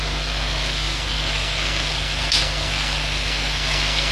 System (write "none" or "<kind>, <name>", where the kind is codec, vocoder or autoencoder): codec, SNAC